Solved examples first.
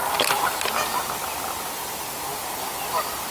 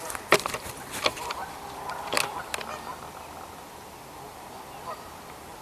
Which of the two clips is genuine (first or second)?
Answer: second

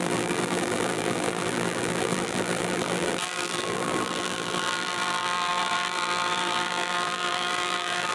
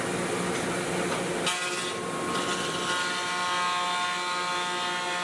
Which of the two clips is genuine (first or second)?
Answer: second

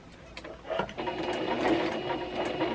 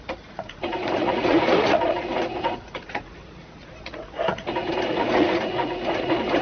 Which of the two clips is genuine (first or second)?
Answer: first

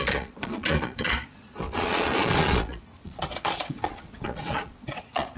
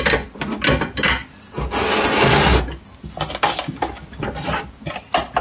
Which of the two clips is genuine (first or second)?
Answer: second